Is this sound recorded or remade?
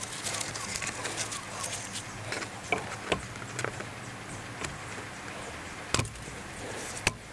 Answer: recorded